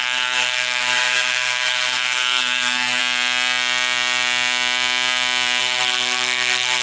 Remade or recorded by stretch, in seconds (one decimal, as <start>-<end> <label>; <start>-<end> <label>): 0.0-3.0 remade; 3.0-5.6 recorded; 5.6-6.8 remade